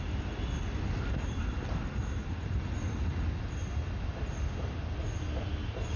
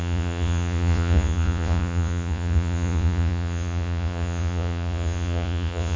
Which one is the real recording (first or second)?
first